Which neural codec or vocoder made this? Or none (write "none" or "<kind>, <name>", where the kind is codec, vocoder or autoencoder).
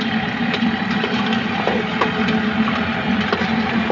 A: none